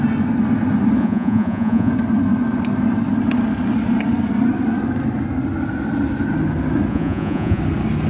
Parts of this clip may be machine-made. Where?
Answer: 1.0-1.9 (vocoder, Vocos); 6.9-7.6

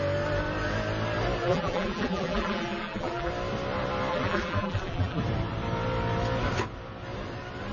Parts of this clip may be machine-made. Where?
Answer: 1.4-3.3 (vocoder, BigVGAN v2); 4.1-5.2

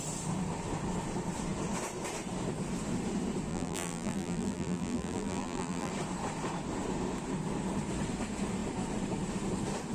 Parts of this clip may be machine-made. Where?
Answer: 3.5-5.9 (vocoder, BigVGAN v2)

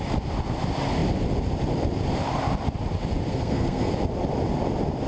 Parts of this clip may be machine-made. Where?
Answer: 3.3-3.9 (codec, SNAC)

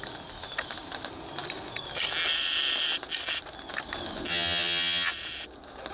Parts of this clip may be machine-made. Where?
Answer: 4.3-5.1 (vocoder, HiFi-GAN)

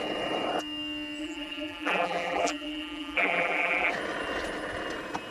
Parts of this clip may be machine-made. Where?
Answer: 1.2-3.9 (vocoder, BigVGAN v2)

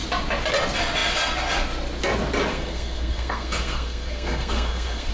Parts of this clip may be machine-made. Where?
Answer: 2.5-5.1 (codec, SNAC)